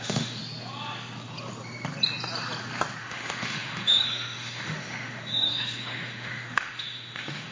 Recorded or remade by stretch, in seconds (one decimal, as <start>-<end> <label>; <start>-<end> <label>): 0.0-0.4 remade; 0.4-3.0 recorded; 3.0-7.5 remade